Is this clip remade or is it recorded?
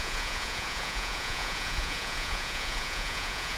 remade